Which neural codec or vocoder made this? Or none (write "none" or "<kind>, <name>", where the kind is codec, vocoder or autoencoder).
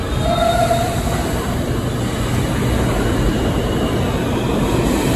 none